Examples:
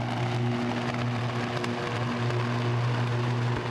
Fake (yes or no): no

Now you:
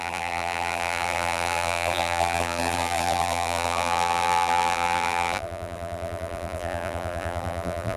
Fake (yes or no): yes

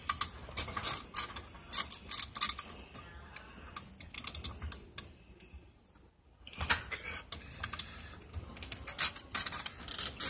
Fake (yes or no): no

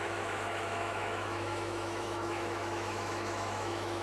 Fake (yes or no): yes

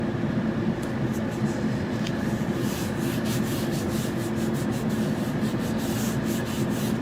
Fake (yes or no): no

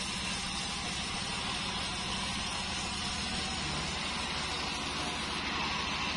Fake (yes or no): no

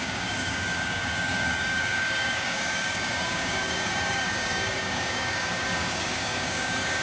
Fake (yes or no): yes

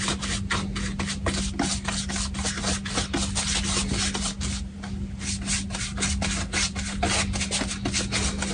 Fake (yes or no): no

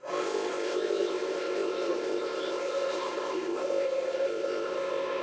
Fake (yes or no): yes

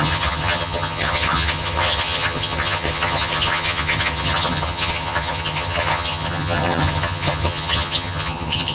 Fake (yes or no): yes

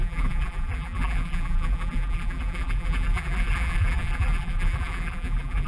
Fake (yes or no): yes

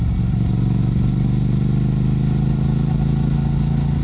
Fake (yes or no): no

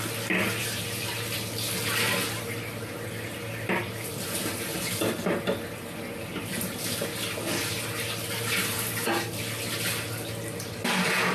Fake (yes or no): no